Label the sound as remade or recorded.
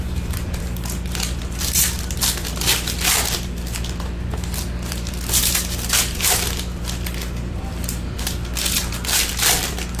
remade